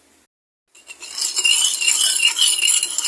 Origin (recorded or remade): recorded